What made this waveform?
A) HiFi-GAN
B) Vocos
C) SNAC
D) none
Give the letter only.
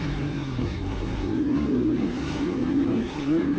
C